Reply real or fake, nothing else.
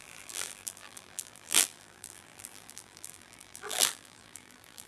fake